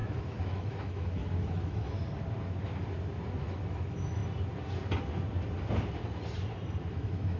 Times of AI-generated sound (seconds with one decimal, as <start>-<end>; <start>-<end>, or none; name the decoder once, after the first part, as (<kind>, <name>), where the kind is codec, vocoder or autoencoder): 0.0-2.0 (autoencoder, DAC-VAE); 3.4-4.2; 6.9-7.4